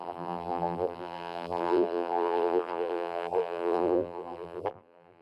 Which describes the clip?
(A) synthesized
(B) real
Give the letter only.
A